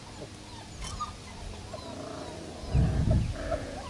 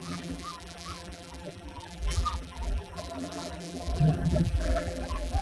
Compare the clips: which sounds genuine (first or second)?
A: first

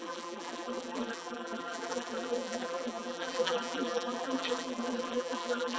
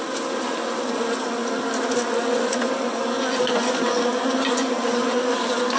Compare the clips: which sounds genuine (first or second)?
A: second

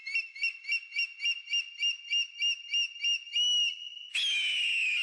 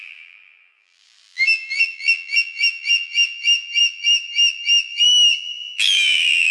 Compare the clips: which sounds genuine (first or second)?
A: first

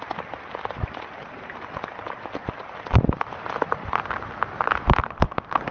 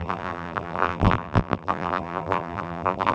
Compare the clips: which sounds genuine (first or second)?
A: first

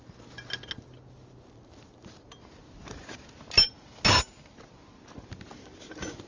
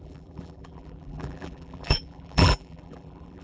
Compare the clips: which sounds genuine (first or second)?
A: first